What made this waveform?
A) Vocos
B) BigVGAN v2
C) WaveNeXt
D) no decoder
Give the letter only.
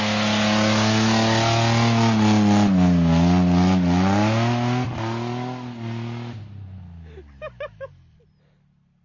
D